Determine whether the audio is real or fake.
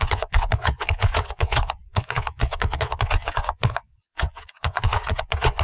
fake